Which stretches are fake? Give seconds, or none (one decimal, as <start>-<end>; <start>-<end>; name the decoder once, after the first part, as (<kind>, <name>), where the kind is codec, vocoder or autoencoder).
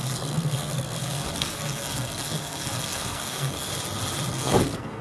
0.0-3.7 (codec, SNAC); 4.3-5.0